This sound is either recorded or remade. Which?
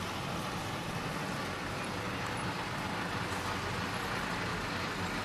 recorded